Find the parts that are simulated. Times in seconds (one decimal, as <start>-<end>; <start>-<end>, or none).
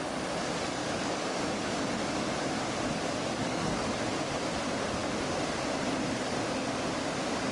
0.8-1.4; 3.4-3.9